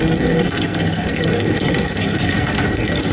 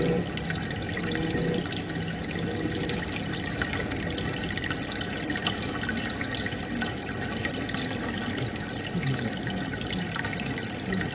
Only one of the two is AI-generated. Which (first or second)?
first